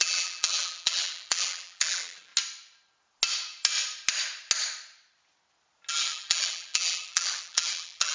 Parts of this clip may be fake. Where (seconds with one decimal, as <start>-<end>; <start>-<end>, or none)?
0.0-2.3; 5.9-8.1